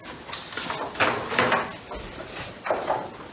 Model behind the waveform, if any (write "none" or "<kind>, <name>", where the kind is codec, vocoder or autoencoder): none